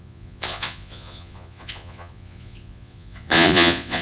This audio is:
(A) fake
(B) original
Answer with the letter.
A